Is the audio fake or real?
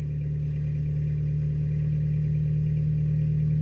real